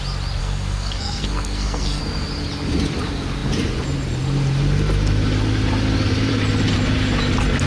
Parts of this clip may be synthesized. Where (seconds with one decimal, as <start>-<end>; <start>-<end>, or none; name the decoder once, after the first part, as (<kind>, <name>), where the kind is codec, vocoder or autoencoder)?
0.4-2.0 (codec, SNAC)